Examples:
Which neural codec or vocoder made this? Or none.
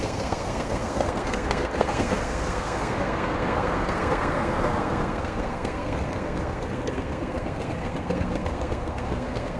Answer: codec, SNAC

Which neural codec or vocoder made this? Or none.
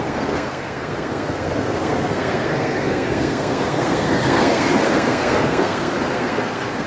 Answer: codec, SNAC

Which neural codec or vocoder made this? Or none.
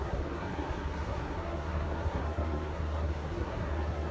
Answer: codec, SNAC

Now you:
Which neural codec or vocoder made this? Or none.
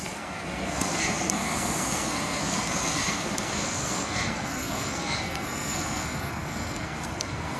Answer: codec, SNAC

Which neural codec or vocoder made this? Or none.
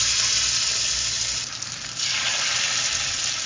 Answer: none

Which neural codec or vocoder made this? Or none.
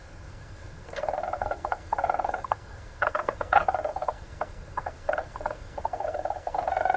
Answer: codec, SNAC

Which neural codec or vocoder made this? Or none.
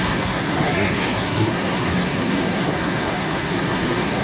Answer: codec, SNAC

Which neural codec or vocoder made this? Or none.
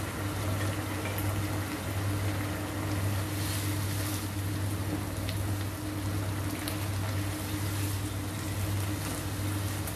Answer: none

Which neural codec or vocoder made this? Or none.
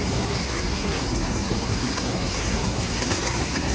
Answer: codec, SNAC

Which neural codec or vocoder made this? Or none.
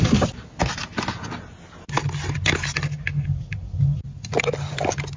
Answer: none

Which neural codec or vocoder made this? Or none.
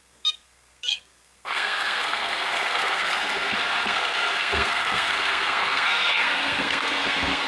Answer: codec, SNAC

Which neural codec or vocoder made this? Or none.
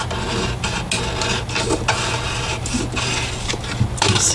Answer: none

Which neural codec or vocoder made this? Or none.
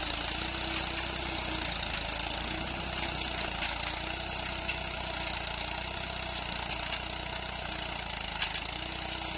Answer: none